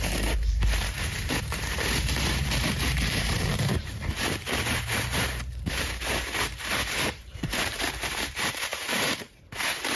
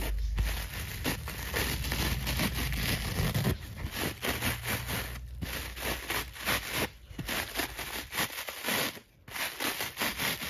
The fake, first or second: first